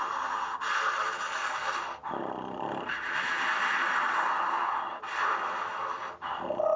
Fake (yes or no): no